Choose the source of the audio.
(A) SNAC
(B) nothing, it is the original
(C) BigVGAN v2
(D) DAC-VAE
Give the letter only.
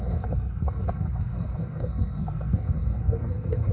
A